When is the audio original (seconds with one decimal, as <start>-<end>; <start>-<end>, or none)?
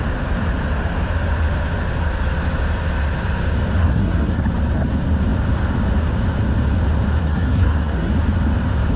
0.0-3.8; 4.4-7.2; 8.1-9.0